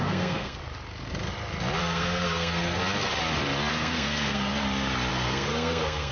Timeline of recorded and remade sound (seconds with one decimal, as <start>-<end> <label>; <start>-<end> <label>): 0.0-0.6 remade; 0.6-1.8 recorded; 1.8-2.8 remade; 2.8-3.7 recorded; 3.7-4.5 remade; 4.5-5.1 recorded; 5.1-6.1 remade